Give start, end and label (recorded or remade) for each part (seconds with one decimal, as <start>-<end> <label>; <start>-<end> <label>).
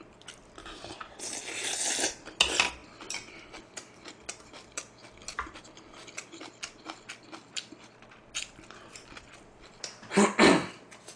0.0-11.2 recorded